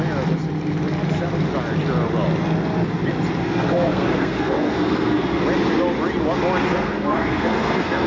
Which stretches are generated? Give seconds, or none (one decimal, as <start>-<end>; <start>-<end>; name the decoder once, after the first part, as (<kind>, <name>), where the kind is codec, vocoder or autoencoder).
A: 3.4-5.4 (codec, SNAC); 6.7-8.1